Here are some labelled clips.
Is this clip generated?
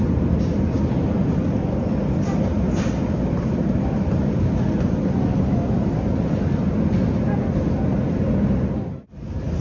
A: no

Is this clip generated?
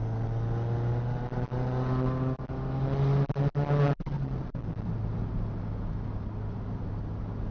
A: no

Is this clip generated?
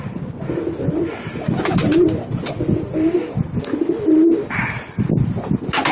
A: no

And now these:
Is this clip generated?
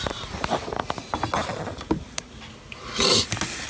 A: no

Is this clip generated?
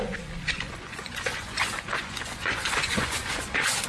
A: yes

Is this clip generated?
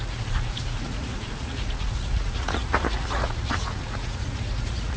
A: yes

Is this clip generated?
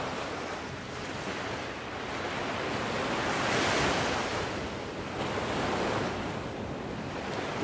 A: no